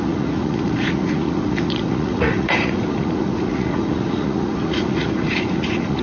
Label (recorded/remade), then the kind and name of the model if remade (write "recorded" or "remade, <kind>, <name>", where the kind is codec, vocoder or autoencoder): remade, vocoder, Vocos